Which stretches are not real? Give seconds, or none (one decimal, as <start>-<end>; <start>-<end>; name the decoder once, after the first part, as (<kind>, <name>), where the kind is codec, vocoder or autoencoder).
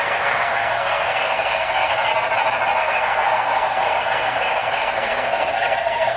0.0-2.1 (codec, SNAC); 2.8-6.2